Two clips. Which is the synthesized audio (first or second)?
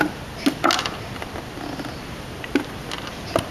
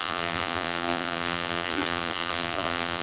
second